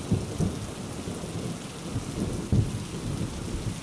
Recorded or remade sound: recorded